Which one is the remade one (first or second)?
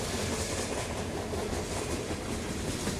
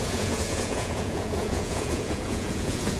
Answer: second